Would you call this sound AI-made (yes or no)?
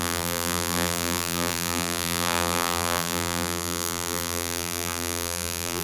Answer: yes